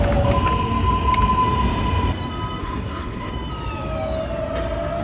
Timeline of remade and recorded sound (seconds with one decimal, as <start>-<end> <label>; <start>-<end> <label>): 0.0-2.6 recorded; 2.6-3.3 remade; 3.3-5.0 recorded